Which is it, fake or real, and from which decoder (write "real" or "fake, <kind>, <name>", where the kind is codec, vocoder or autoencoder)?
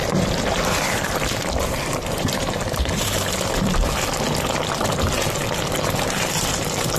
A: fake, vocoder, BigVGAN v2